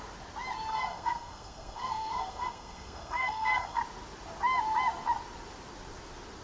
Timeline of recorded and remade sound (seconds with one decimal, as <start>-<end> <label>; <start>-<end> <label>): 0.0-0.7 recorded; 0.7-3.8 remade; 3.8-6.4 recorded